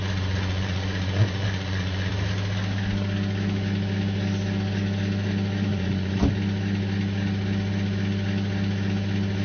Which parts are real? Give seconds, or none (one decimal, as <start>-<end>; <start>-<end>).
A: 2.1-5.7; 6.2-9.4